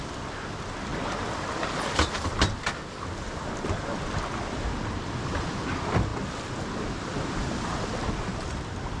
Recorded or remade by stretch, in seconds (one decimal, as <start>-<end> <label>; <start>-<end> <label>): 0.0-9.0 recorded